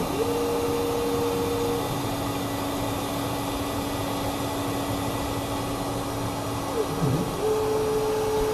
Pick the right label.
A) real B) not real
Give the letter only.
A